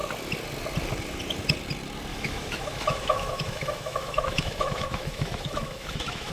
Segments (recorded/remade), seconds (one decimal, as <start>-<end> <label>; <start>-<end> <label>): 0.0-2.1 recorded; 2.1-6.3 remade

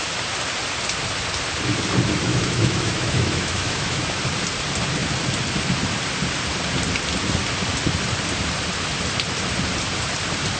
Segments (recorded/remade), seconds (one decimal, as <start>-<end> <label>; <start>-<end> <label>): 0.0-2.3 recorded; 2.3-4.2 remade; 4.2-10.6 recorded

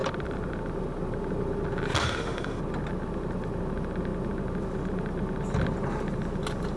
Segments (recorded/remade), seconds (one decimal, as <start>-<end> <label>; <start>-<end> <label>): 0.0-2.0 recorded; 2.0-2.6 remade; 2.6-6.8 recorded

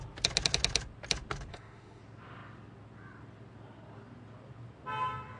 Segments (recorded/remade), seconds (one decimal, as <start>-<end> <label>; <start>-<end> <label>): 0.0-1.5 recorded; 1.5-2.0 remade; 2.0-5.4 recorded